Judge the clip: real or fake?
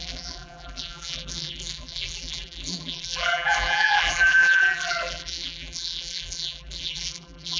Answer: fake